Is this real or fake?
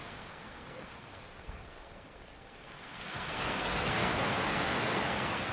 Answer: fake